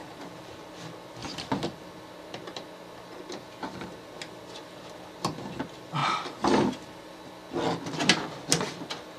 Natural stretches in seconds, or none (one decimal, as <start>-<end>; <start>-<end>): 0.5-6.0; 7.3-9.2